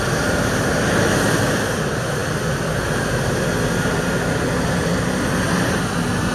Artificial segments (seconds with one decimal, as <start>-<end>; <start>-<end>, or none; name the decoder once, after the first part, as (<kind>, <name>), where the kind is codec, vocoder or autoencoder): 2.2-3.7 (vocoder, BigVGAN v2)